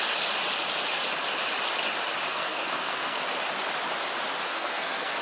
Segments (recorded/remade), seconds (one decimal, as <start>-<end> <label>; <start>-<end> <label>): 0.0-2.3 recorded; 2.3-3.2 remade; 3.2-4.5 recorded; 4.5-5.2 remade